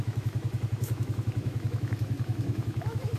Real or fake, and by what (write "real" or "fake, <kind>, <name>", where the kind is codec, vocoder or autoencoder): fake, autoencoder, DAC-VAE